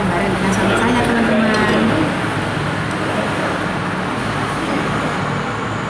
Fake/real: real